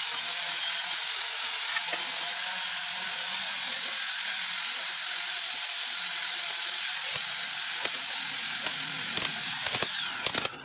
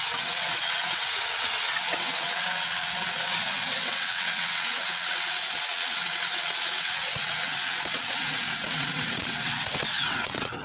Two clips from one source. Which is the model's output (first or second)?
second